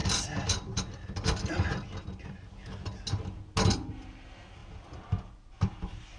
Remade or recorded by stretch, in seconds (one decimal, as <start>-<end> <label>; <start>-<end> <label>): 0.0-2.3 remade; 2.3-4.6 recorded; 4.6-6.2 remade